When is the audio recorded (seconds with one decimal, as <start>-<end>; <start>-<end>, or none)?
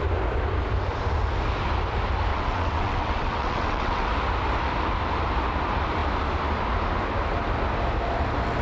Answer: 0.0-2.3; 4.1-8.6